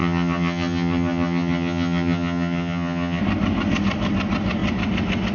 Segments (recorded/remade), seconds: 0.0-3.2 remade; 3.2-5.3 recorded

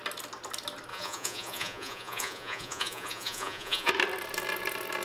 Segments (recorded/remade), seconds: 0.0-0.9 recorded; 0.9-3.9 remade; 3.9-5.0 recorded